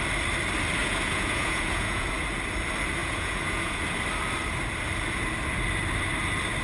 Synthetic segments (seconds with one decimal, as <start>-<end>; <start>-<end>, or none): 0.8-2.1; 3.0-3.8